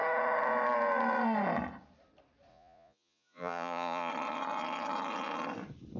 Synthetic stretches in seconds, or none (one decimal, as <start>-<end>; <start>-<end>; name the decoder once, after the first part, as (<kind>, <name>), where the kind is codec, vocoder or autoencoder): 2.5-4.1 (vocoder, Vocos)